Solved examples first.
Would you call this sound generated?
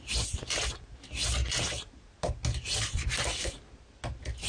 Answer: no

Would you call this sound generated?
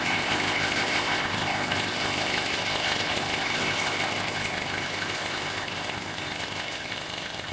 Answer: yes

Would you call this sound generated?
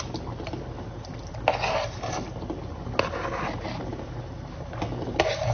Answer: no